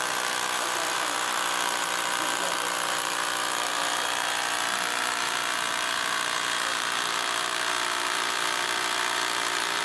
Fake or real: fake